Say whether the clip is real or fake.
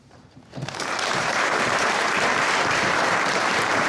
fake